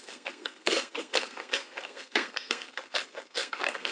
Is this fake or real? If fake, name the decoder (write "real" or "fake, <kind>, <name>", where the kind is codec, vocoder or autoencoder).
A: fake, codec, SNAC